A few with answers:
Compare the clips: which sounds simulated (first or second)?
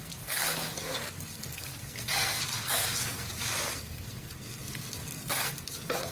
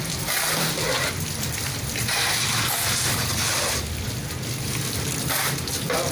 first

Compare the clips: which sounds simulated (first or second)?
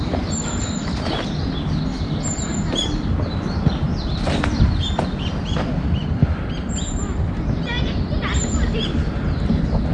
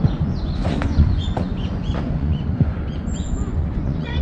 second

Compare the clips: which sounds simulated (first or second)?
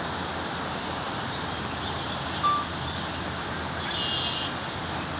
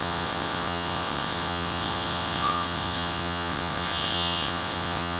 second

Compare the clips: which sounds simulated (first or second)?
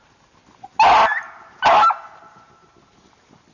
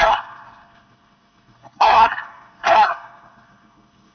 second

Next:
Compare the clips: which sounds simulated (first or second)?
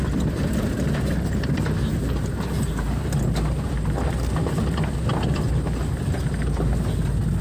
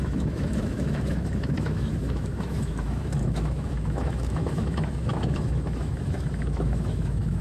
second